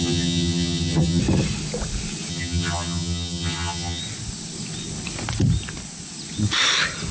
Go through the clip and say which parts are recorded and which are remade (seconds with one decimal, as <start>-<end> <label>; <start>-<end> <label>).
0.0-1.2 remade; 1.2-2.3 recorded; 2.3-4.0 remade; 4.0-7.1 recorded